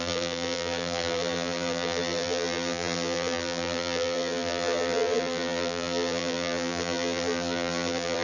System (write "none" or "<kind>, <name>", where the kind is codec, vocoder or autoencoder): vocoder, BigVGAN v2